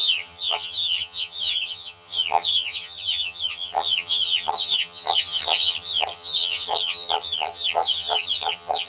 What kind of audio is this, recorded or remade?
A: remade